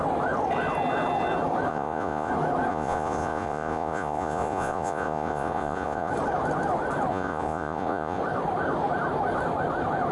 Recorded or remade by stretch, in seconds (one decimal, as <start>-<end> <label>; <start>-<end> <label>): 0.0-1.7 recorded; 1.7-2.3 remade; 2.3-2.7 recorded; 2.7-6.1 remade; 6.1-7.1 recorded; 7.1-8.2 remade; 8.2-10.1 recorded